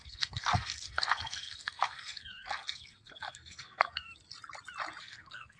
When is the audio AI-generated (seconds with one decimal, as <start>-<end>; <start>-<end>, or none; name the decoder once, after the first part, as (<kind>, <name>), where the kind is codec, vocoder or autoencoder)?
0.0-4.1 (codec, SNAC); 5.0-5.6